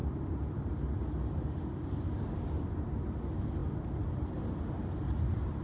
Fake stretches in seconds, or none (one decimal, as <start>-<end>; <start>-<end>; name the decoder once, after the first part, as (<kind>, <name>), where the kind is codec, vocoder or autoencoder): none